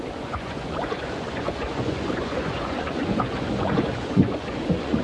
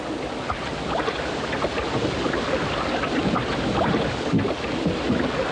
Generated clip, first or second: first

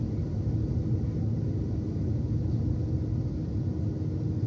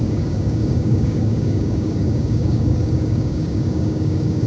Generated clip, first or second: second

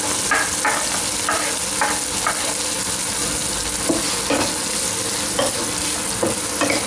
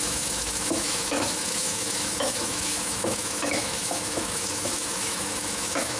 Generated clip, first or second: second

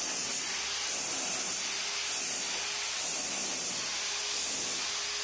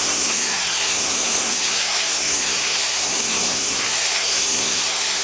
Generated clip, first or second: second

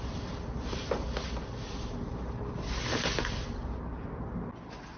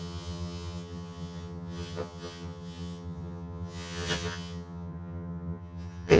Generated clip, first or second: second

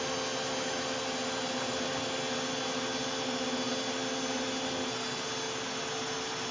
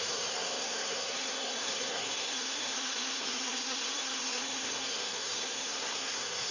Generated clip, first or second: second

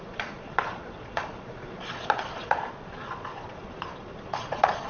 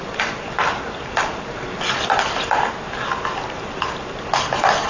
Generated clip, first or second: first